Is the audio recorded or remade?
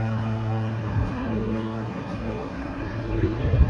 remade